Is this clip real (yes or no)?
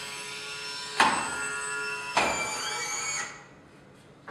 yes